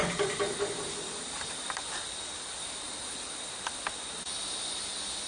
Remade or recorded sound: recorded